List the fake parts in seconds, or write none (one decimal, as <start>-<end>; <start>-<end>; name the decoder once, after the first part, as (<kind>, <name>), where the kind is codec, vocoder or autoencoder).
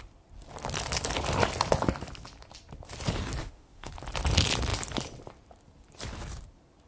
3.4-3.9 (autoencoder, DAC-VAE)